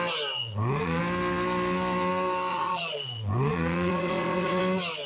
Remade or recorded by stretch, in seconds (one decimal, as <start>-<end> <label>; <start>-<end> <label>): 0.0-0.4 recorded; 0.4-1.0 remade; 1.0-2.5 recorded; 2.5-4.6 remade; 4.6-5.1 recorded